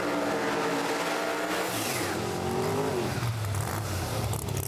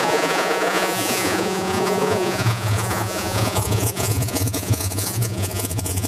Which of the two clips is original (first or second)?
first